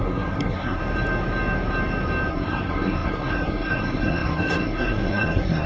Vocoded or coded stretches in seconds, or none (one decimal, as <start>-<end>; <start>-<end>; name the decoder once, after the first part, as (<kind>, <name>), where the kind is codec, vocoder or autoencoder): 0.0-0.8 (codec, SNAC); 2.3-5.7